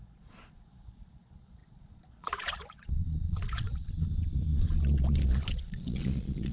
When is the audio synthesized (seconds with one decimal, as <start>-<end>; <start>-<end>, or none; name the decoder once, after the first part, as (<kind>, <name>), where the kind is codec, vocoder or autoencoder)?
0.0-6.5 (vocoder, Vocos)